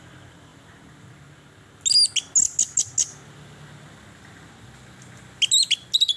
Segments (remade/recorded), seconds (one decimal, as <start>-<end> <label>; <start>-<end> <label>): 0.0-6.2 recorded

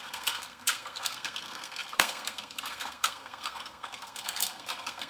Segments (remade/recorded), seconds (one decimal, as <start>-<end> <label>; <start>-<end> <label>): 0.0-5.1 remade

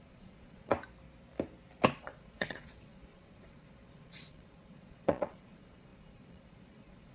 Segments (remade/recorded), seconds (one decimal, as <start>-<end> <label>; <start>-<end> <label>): 0.0-0.7 remade; 0.7-2.0 recorded; 2.0-7.1 remade

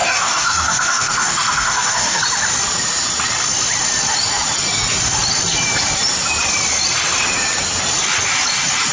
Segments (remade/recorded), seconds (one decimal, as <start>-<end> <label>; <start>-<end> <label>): 0.0-2.2 remade; 2.2-8.9 recorded

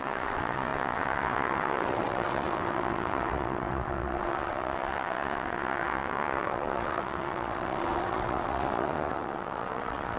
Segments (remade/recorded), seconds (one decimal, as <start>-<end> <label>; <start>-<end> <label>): 0.0-10.2 remade

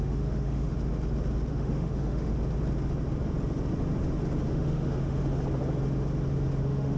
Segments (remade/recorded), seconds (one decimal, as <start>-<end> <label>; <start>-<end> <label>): 0.0-0.7 remade; 0.7-1.5 recorded; 1.5-2.3 remade; 2.3-4.5 recorded; 4.5-5.2 remade; 5.2-6.6 recorded; 6.6-7.0 remade